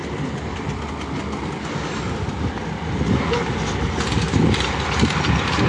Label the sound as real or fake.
real